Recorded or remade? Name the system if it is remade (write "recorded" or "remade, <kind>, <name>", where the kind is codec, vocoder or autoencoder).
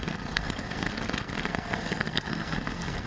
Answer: remade, codec, SNAC